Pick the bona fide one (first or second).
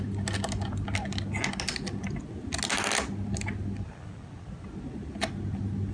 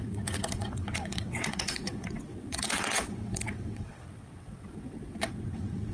first